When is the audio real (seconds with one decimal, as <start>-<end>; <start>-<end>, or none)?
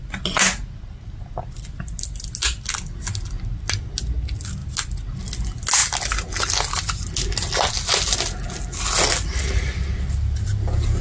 0.0-11.0